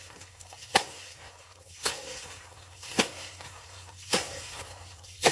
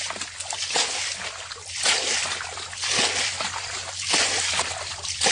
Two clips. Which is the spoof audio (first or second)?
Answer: first